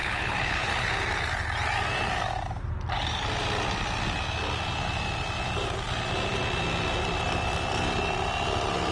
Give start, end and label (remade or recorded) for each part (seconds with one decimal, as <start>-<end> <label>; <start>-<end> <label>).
0.0-0.9 remade; 0.9-8.9 recorded